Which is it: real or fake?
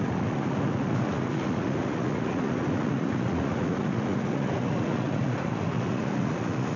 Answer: fake